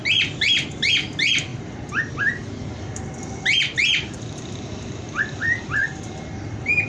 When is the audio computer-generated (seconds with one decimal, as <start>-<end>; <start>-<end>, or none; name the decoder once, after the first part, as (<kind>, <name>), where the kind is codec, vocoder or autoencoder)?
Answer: none